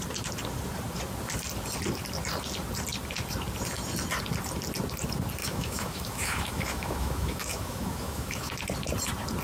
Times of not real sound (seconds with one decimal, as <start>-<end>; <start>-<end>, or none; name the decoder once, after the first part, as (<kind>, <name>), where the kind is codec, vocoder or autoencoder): 5.4-8.5 (autoencoder, DAC-VAE)

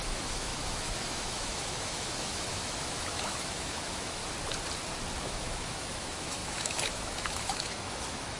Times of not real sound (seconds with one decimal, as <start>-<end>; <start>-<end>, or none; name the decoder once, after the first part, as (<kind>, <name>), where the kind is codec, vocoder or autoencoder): 0.0-4.2 (autoencoder, DAC-VAE); 5.2-8.4

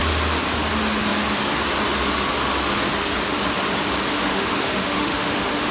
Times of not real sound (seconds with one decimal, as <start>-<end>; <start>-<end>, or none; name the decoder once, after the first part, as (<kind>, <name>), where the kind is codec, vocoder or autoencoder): 4.1-5.7 (autoencoder, DAC-VAE)

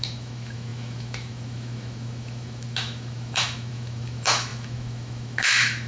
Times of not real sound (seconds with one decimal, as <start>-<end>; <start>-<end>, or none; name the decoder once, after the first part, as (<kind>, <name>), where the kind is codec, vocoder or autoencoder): 0.0-5.9 (autoencoder, DAC-VAE)

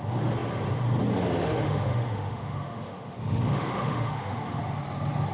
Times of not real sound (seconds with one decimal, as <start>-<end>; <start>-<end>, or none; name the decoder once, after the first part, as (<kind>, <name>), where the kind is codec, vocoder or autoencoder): 1.4-4.6 (autoencoder, DAC-VAE)